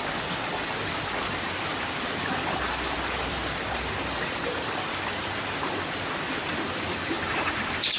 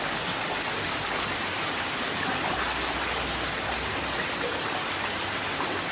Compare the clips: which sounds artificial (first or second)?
first